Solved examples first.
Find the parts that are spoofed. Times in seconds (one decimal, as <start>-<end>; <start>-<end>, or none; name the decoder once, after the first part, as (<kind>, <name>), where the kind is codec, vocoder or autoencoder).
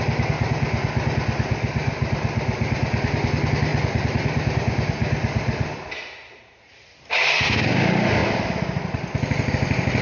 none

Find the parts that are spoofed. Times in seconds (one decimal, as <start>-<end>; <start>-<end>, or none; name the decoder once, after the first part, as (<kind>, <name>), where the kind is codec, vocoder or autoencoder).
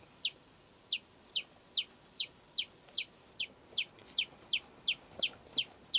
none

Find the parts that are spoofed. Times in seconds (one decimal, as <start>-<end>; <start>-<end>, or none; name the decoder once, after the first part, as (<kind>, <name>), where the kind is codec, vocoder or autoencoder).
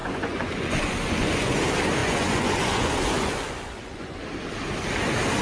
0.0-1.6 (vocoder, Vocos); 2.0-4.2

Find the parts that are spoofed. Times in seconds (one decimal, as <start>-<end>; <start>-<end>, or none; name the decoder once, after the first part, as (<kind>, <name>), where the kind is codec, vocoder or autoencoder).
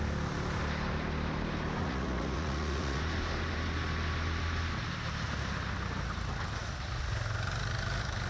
1.8-3.0 (vocoder, Vocos)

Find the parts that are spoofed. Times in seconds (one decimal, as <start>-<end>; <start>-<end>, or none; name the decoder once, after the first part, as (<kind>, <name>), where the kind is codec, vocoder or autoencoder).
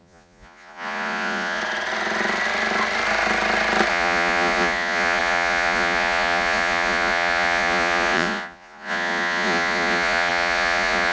0.0-1.6 (vocoder, Vocos); 3.9-11.1